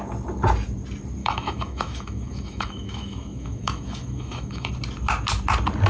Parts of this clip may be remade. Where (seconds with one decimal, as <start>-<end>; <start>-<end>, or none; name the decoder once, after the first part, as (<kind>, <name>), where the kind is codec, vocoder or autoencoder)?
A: 1.2-4.7 (autoencoder, DAC-VAE)